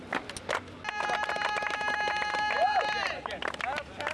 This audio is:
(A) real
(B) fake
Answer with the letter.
A